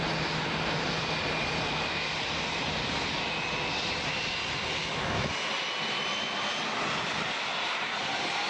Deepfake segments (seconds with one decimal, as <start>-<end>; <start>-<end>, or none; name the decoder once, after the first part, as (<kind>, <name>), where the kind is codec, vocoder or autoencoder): 4.8-5.3 (autoencoder, DAC-VAE)